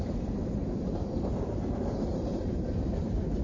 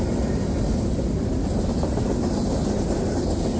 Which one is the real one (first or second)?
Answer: second